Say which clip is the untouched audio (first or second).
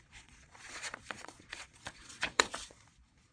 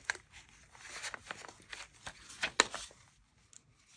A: second